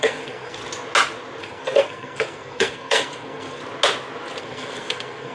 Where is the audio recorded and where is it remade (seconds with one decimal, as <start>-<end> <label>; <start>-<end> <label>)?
0.0-0.6 remade; 0.6-1.4 recorded; 1.4-3.6 remade; 3.6-4.4 recorded; 4.4-5.3 remade